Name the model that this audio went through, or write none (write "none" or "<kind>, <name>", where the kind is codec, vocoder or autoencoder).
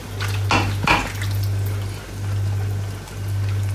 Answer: none